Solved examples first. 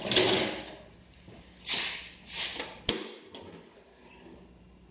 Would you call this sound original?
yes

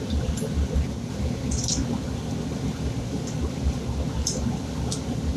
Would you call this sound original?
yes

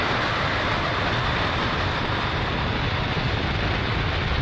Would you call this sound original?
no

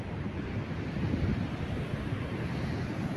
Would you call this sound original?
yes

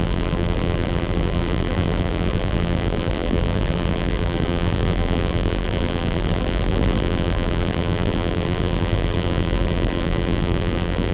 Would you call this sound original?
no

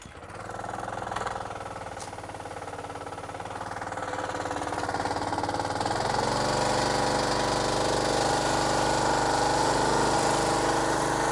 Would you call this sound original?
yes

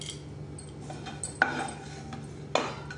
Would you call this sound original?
yes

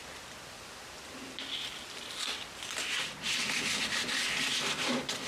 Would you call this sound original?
yes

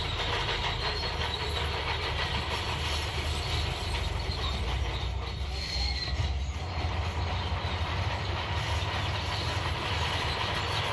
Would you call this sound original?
no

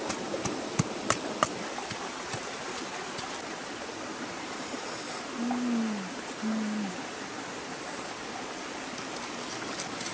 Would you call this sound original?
yes